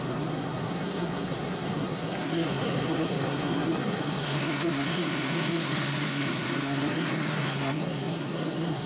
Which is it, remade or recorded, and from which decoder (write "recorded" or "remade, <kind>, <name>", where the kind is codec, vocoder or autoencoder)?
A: remade, codec, SNAC